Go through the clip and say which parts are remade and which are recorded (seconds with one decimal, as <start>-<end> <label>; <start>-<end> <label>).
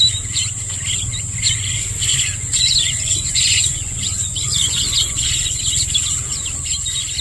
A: 0.0-2.1 recorded; 2.1-5.6 remade; 5.6-7.2 recorded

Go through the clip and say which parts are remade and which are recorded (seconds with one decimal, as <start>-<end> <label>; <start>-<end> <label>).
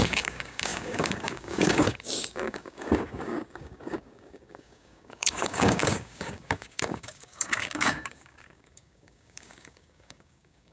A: 0.0-10.7 remade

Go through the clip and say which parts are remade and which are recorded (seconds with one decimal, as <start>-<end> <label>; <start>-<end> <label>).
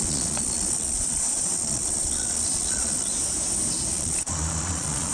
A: 0.0-3.1 remade; 3.1-3.9 recorded; 3.9-5.1 remade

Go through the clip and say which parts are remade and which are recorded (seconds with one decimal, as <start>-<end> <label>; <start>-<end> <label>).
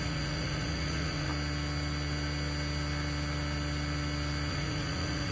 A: 0.0-1.3 remade; 1.3-4.5 recorded; 4.5-5.3 remade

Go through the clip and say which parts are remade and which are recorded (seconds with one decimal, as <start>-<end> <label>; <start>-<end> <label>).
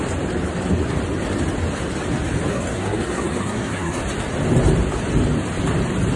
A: 0.0-2.5 recorded; 2.5-4.0 remade; 4.0-6.2 recorded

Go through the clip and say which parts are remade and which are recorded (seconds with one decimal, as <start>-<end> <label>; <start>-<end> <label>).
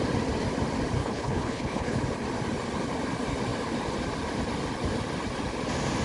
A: 0.0-1.0 recorded; 1.0-2.0 remade; 2.0-6.0 recorded